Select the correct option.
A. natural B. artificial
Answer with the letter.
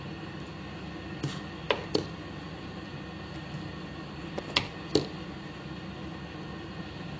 A